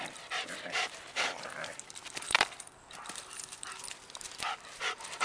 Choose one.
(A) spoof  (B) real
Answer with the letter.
A